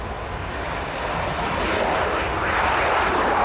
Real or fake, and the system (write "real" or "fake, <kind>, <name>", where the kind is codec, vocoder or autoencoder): real